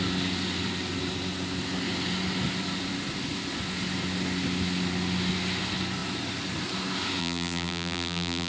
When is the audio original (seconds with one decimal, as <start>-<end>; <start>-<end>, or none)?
0.0-7.2